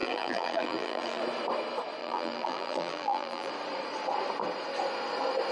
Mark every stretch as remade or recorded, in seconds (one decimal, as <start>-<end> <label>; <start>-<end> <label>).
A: 0.0-1.2 remade; 1.2-2.0 recorded; 2.0-3.5 remade; 3.5-5.5 recorded